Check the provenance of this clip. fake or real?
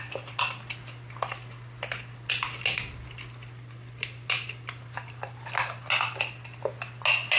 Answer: real